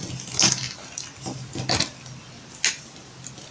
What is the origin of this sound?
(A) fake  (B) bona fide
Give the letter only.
B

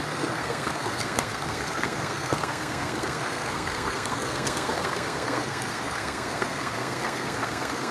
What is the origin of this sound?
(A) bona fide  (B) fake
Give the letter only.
B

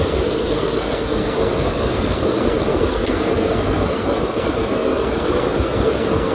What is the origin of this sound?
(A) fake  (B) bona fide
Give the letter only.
A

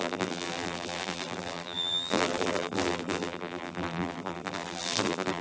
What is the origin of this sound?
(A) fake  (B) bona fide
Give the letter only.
A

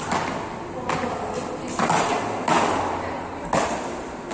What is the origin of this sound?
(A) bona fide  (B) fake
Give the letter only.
A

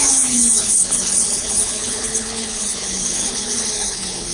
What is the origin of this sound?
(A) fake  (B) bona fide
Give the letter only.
A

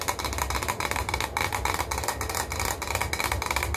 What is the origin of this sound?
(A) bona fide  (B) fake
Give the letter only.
A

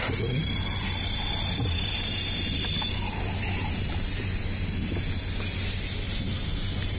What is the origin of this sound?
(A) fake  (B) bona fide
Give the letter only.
B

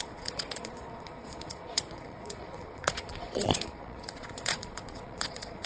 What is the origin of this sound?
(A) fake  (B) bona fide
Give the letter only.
A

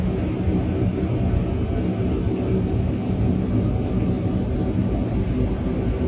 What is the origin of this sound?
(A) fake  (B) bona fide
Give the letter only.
B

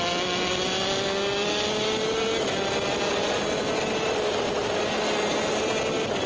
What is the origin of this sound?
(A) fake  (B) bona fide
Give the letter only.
B